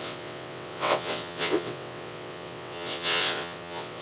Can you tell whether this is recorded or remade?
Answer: remade